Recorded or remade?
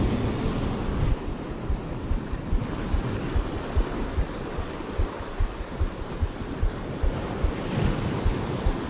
recorded